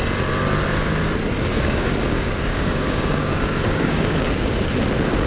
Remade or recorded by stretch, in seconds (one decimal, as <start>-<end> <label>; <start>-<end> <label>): 0.0-1.5 recorded; 1.5-4.7 remade; 4.7-5.3 recorded

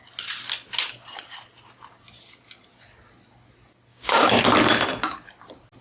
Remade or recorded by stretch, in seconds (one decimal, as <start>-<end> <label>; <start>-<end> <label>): 0.0-3.9 recorded; 3.9-4.4 remade; 4.4-5.8 recorded

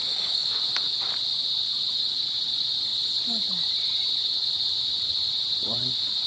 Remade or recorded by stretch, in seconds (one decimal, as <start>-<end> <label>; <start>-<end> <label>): 0.0-0.5 remade; 0.5-6.3 recorded

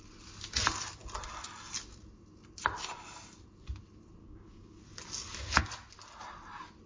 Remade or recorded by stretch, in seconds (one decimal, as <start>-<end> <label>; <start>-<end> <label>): 0.0-4.2 recorded; 4.2-4.8 remade; 4.8-6.9 recorded

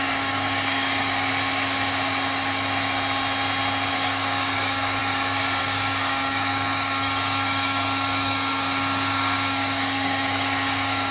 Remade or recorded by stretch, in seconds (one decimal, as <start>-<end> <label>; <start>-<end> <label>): 0.0-1.3 remade; 1.3-3.9 recorded; 3.9-11.1 remade

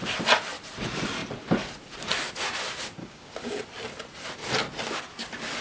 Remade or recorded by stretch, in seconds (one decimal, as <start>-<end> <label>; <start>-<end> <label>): 0.0-3.0 recorded; 3.0-3.6 remade; 3.6-5.6 recorded